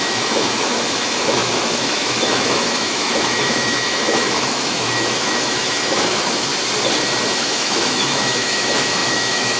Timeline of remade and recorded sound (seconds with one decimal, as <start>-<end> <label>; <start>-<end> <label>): 0.0-6.5 remade; 6.5-7.4 recorded; 7.4-9.6 remade